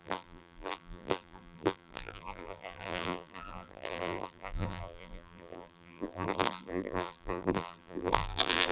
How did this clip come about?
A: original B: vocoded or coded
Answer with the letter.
B